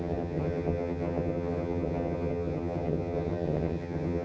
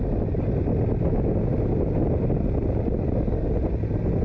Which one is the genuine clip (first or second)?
second